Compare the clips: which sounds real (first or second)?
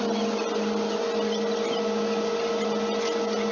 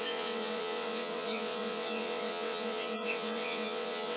first